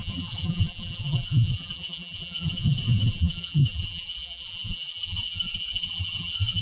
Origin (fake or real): fake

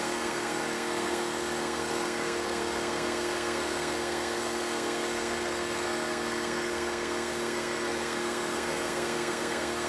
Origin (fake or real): fake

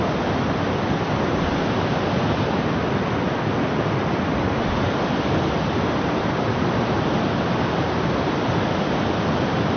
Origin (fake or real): real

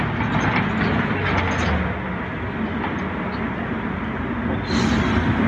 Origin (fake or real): real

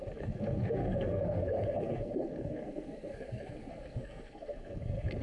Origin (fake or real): fake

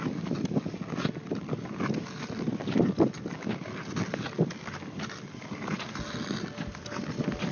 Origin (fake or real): real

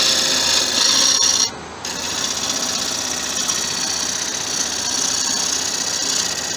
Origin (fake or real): real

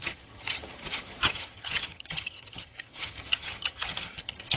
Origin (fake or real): fake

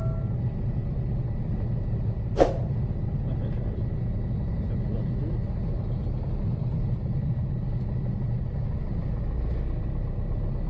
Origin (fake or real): real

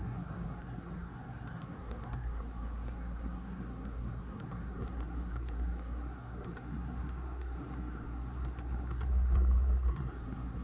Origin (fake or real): fake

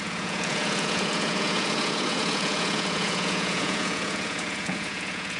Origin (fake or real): fake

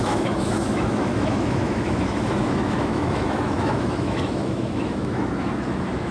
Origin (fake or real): fake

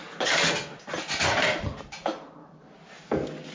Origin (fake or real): real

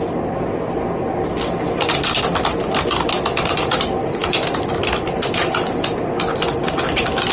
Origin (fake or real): real